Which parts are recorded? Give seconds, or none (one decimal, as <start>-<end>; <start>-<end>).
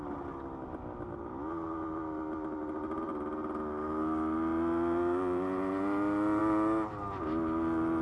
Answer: 0.0-8.0